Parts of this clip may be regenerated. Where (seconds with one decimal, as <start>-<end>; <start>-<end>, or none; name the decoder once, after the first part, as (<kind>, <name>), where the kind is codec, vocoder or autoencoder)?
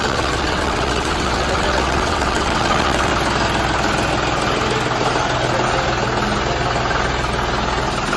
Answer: 0.0-3.1 (vocoder, WaveNeXt)